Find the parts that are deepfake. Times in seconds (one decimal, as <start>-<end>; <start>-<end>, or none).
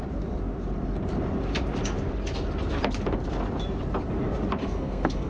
4.6-5.3